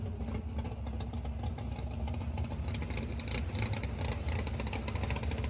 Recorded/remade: recorded